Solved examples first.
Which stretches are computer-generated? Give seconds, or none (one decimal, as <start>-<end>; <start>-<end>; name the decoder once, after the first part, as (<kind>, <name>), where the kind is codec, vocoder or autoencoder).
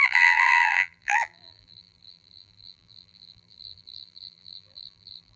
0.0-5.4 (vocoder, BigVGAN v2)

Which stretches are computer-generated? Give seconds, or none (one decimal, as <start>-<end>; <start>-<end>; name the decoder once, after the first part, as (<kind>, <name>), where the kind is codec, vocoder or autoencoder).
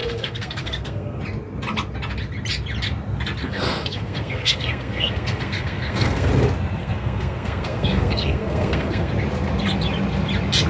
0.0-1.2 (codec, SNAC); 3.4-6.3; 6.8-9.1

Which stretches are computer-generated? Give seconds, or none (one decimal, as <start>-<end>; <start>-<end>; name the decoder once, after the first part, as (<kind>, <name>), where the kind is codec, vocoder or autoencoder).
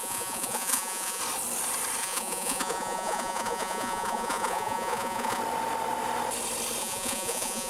0.0-1.2 (vocoder, Vocos); 2.0-5.4; 6.8-7.7